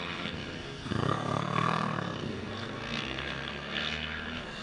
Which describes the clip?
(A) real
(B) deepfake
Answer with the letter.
B